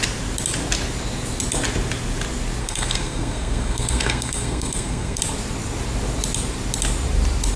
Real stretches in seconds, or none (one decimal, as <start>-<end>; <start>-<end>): 0.0-2.6; 5.2-7.6